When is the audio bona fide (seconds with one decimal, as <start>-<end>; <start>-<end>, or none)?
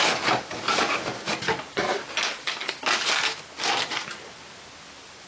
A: 0.0-5.3